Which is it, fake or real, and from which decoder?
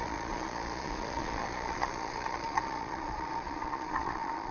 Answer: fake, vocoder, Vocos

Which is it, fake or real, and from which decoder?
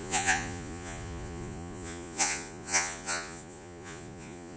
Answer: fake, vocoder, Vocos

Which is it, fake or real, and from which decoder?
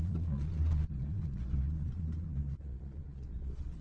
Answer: fake, vocoder, Vocos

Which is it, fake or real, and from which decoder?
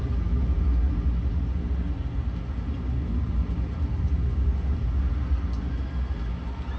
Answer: real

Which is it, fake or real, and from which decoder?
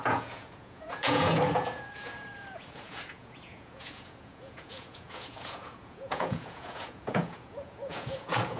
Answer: fake, vocoder, Vocos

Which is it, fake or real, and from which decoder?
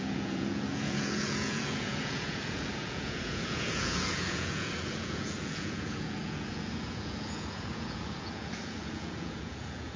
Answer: fake, vocoder, Vocos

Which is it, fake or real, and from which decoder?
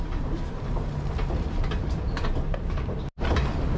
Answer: real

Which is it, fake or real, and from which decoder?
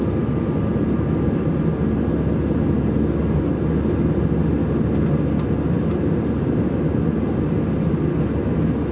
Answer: real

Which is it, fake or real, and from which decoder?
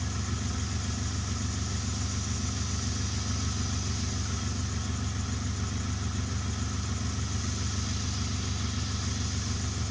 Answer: real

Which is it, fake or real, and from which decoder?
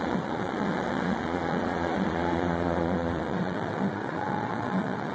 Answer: fake, vocoder, Vocos